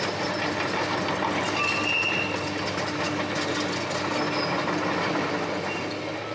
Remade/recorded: recorded